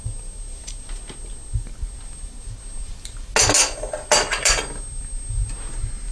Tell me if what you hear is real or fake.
real